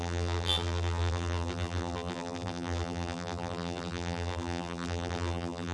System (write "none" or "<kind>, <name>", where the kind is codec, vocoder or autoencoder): vocoder, BigVGAN v2